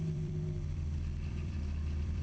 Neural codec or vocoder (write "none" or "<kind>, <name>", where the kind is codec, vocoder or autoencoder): vocoder, BigVGAN v2